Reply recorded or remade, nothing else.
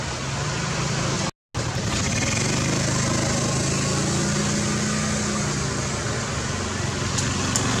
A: recorded